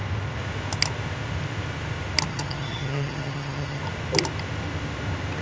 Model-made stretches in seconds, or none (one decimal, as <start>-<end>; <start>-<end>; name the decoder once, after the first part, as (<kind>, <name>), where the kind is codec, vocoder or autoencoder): 2.3-3.8 (vocoder, HiFi-GAN)